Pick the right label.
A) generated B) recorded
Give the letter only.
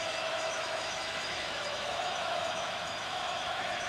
A